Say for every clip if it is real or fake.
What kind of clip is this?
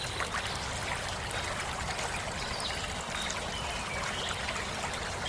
real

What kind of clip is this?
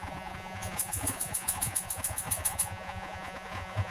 fake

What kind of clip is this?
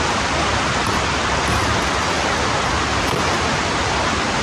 real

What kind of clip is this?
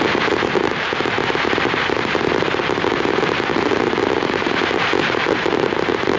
fake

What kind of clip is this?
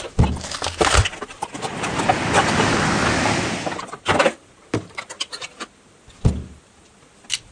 real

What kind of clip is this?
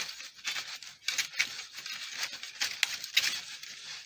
real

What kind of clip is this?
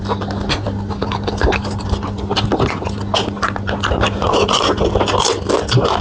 real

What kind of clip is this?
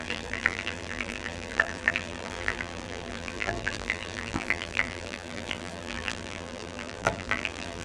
fake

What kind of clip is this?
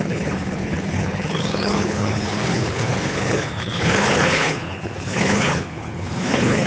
fake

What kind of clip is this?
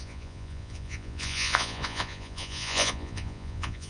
fake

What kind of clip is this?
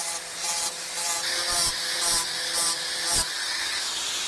real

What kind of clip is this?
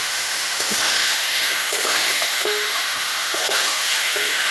fake